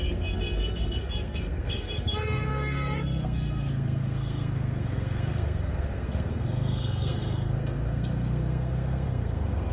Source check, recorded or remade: remade